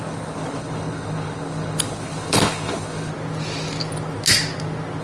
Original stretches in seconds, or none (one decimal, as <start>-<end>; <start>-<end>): 3.1-5.0